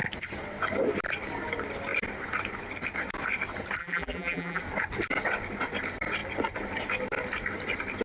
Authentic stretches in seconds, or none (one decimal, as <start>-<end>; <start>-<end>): 0.0-3.8; 4.6-8.0